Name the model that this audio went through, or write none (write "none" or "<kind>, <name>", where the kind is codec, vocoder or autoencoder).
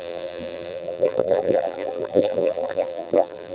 vocoder, BigVGAN v2